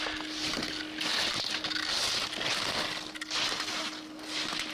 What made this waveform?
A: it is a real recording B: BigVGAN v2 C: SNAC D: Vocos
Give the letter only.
A